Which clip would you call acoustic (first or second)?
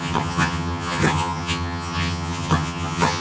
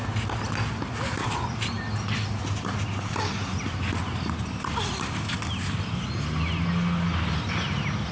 second